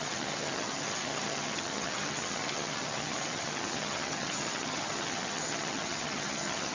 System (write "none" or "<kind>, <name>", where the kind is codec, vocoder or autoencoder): vocoder, HiFi-GAN